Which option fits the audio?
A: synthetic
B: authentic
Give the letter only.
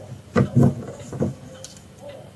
B